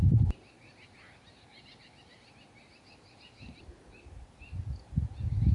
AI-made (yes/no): no